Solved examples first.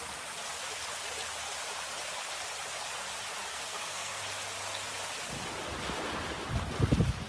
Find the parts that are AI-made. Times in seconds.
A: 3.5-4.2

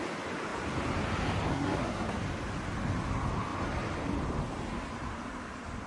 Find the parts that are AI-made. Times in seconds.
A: 1.5-2.2

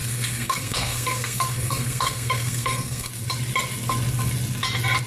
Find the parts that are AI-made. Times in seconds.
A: 0.0-3.1

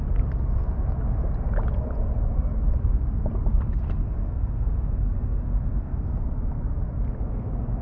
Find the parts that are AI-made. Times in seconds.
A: 3.5-6.0

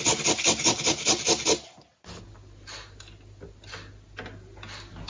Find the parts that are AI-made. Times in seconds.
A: none

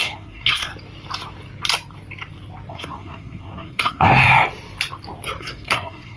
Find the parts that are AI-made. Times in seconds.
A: 0.0-0.7; 2.7-4.1; 5.4-6.2

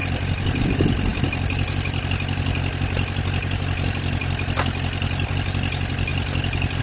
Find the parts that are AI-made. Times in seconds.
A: none